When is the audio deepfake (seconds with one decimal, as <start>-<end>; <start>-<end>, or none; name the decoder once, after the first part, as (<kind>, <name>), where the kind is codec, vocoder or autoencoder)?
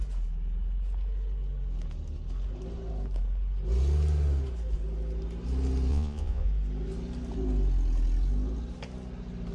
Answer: 5.9-6.5 (vocoder, Vocos)